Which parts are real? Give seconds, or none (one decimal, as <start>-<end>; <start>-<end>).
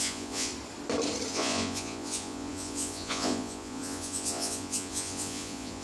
0.5-1.3